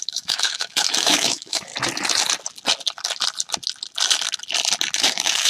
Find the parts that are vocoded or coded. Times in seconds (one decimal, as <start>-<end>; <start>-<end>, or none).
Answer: 0.0-1.7; 5.0-5.5